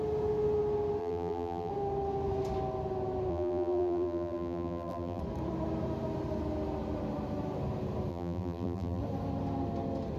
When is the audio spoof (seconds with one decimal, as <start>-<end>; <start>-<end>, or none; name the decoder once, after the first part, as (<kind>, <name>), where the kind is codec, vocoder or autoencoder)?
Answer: 1.0-1.7 (vocoder, BigVGAN v2); 3.3-5.2; 8.1-9.0